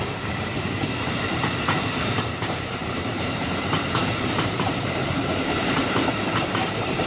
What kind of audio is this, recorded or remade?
remade